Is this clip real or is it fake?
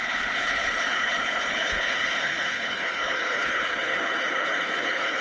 fake